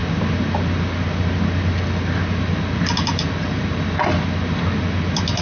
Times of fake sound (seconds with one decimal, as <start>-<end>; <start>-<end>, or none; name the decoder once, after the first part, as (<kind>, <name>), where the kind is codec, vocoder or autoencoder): none